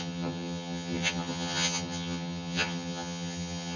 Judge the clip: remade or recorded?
remade